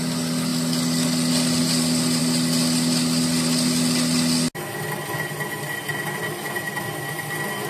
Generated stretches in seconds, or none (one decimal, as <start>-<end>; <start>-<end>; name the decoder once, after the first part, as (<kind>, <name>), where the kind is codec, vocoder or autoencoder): none